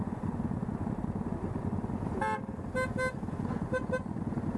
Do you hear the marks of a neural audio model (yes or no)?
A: no